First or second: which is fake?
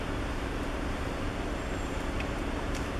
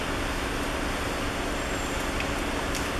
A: first